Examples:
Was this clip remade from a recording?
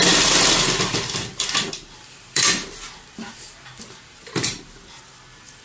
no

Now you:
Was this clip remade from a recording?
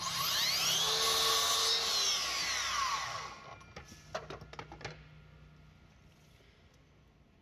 no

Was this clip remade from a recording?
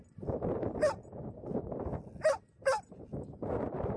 no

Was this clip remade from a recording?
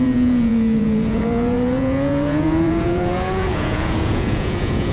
yes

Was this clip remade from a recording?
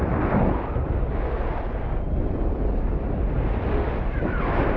no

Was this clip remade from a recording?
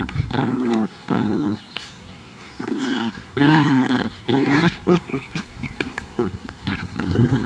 yes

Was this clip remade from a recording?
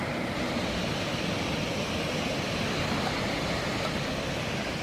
yes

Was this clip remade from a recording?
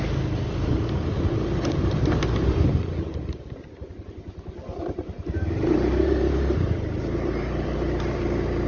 yes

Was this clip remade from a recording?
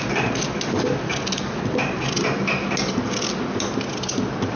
no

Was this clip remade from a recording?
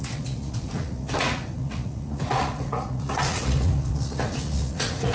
yes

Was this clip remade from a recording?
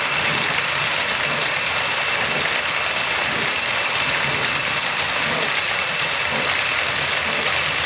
no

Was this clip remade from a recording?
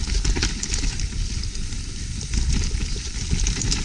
no